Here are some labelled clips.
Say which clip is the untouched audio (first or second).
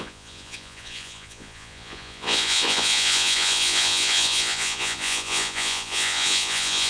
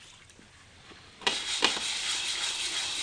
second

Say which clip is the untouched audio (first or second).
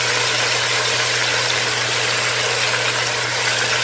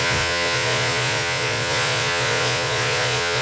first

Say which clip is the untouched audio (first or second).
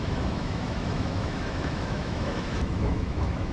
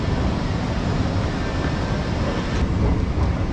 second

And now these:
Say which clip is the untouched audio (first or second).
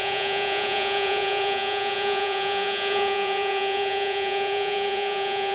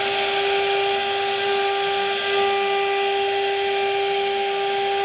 second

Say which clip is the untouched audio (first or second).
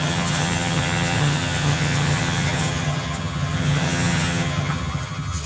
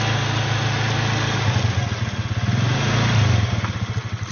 second